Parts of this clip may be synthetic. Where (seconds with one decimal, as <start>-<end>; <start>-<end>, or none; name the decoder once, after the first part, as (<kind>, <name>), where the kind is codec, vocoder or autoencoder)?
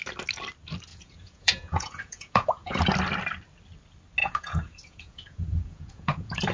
0.9-2.8 (vocoder, Vocos); 4.2-6.5